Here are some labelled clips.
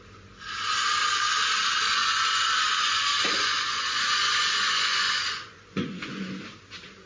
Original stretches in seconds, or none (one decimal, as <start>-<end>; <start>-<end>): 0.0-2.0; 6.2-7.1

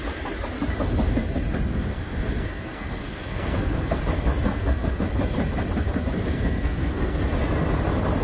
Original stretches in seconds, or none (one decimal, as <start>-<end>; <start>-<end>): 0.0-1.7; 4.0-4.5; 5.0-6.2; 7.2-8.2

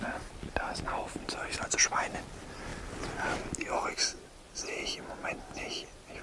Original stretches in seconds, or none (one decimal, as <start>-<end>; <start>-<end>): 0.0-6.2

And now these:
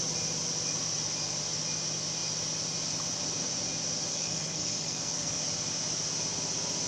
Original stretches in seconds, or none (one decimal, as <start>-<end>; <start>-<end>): 0.0-4.1; 5.4-6.9

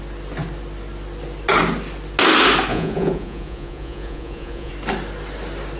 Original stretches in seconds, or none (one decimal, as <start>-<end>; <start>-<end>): 0.0-2.7; 4.7-5.8

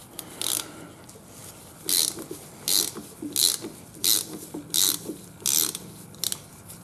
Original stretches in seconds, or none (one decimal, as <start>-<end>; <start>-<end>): 0.0-6.8

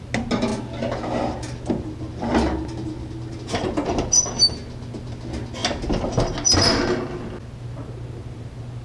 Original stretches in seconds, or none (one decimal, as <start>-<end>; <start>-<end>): 0.0-8.8